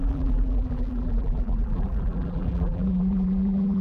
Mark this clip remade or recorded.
remade